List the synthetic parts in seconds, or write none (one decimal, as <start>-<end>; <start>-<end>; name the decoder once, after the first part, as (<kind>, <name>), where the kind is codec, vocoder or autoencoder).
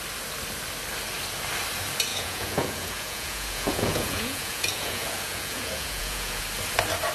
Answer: 2.1-6.4 (vocoder, Vocos)